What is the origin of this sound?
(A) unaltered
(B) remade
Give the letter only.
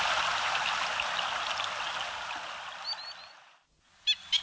A